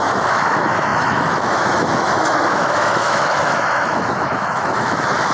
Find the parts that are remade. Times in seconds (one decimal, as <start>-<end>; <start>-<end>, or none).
0.0-5.3